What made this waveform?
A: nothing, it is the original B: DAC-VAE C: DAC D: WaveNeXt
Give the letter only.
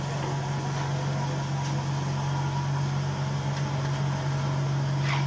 A